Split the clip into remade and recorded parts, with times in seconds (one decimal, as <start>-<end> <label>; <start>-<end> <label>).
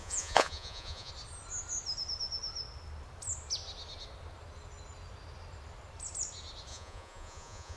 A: 0.0-1.1 remade; 1.1-6.7 recorded; 6.7-7.8 remade